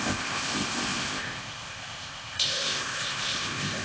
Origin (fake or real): fake